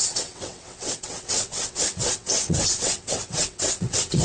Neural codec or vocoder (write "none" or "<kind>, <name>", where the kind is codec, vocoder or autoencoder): vocoder, WaveNeXt